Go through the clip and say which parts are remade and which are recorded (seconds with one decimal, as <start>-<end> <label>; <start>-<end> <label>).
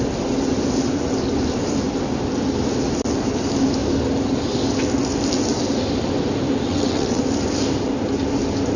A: 0.0-6.7 recorded; 6.7-7.2 remade; 7.2-8.8 recorded